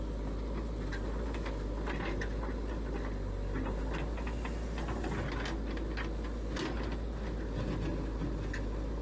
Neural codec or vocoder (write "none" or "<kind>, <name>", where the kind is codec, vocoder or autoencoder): none